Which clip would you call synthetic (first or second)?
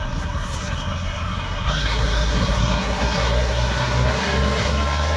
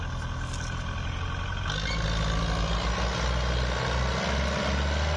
first